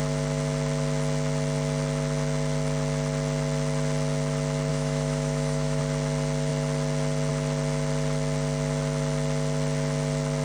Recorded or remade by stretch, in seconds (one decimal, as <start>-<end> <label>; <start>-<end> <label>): 0.0-4.7 recorded; 4.7-5.8 remade; 5.8-10.4 recorded